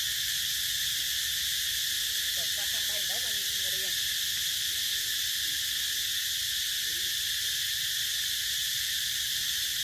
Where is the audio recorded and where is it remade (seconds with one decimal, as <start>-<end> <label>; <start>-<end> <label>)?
0.0-8.6 recorded; 8.6-9.8 remade